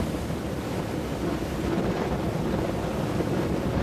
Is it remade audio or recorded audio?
recorded